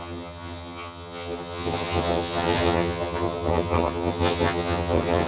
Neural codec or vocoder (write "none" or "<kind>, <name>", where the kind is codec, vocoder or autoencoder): vocoder, HiFi-GAN